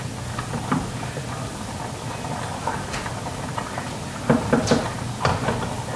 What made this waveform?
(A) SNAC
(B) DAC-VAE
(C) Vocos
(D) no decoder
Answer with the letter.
D